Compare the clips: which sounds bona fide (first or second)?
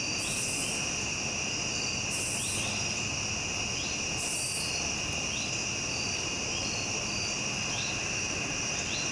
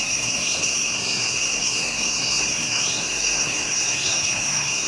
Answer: first